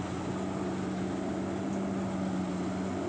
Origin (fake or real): real